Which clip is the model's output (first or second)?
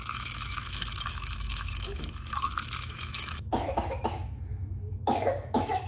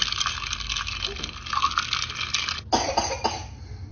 first